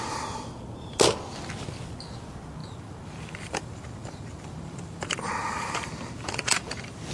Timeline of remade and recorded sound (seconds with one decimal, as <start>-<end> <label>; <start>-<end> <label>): 0.0-2.6 recorded; 2.6-7.1 remade